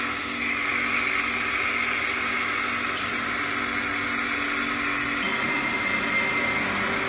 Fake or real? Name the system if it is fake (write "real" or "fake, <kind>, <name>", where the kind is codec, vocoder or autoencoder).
real